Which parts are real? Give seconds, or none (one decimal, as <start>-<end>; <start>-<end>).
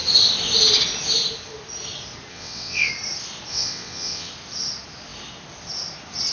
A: 0.0-2.3; 2.9-3.5; 4.3-6.3